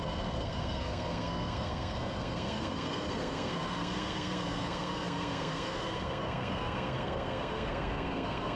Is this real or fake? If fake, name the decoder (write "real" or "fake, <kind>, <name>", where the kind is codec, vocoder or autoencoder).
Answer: fake, codec, SNAC